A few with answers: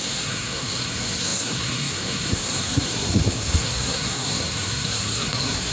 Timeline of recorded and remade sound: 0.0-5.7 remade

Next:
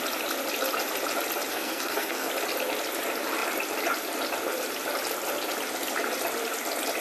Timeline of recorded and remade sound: 0.0-1.5 recorded; 1.5-2.3 remade; 2.3-7.0 recorded

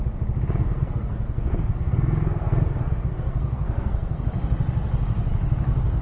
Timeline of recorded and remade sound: 0.0-0.6 recorded; 0.6-4.2 remade; 4.2-6.0 recorded

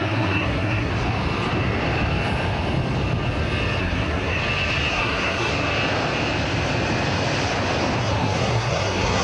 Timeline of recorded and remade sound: 0.0-0.9 remade; 0.9-3.8 recorded; 3.8-4.4 remade; 4.4-4.9 recorded; 4.9-5.5 remade; 5.5-8.0 recorded; 8.0-9.2 remade

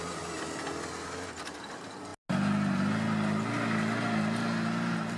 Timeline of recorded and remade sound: 0.0-5.2 recorded

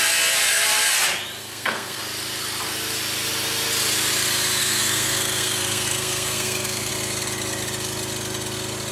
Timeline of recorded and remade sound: 0.0-1.4 recorded; 1.4-2.0 remade; 2.0-4.6 recorded; 4.6-6.9 remade; 6.9-8.9 recorded

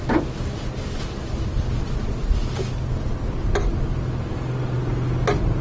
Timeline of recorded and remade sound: 0.0-5.6 recorded

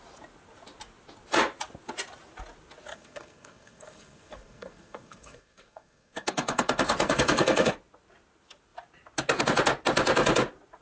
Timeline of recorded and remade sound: 0.0-2.9 recorded; 2.9-7.7 remade; 7.7-10.8 recorded